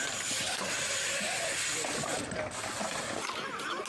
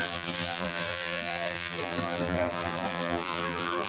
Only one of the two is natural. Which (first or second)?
first